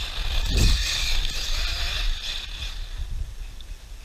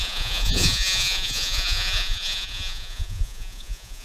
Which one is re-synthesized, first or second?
second